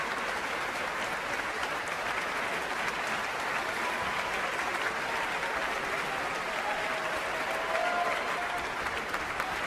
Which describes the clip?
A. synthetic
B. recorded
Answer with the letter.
B